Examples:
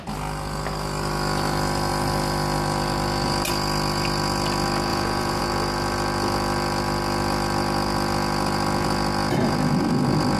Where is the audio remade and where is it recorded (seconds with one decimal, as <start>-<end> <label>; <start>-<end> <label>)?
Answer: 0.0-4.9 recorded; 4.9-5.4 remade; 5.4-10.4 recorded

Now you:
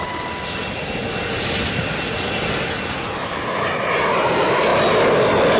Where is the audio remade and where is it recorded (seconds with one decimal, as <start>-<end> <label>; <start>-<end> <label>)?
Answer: 0.0-5.6 recorded

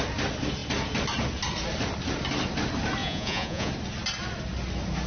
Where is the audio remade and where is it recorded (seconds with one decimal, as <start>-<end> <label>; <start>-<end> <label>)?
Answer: 0.0-3.0 recorded; 3.0-3.7 remade; 3.7-5.1 recorded